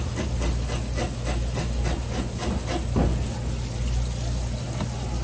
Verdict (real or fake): real